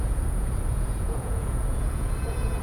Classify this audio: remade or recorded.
remade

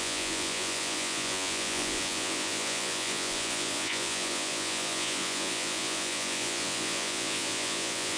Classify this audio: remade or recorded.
remade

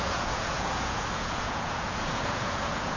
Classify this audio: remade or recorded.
remade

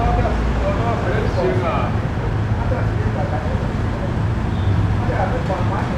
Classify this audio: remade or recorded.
recorded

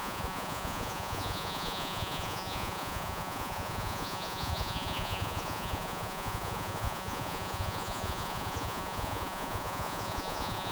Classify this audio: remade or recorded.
remade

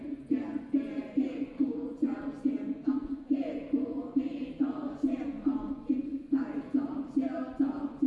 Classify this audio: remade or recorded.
remade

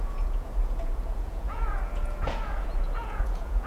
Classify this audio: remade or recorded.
remade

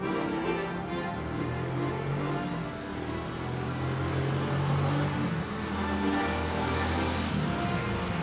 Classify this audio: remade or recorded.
recorded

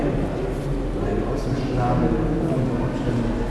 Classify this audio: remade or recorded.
recorded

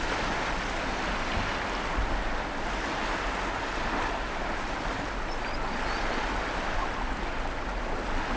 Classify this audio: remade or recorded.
recorded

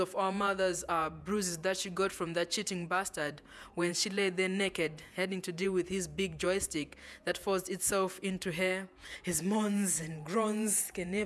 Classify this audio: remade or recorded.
remade